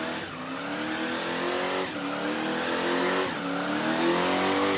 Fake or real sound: real